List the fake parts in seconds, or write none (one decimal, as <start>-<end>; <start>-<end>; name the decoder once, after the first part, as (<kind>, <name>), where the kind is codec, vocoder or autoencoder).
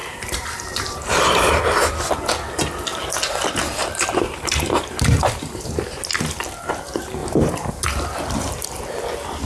0.0-1.6 (vocoder, BigVGAN v2); 3.8-6.4; 7.2-9.0